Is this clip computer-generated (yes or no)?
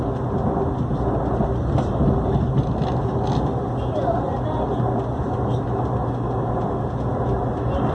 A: no